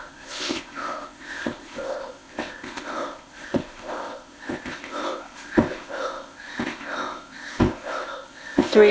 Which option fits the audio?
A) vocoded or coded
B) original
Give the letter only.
A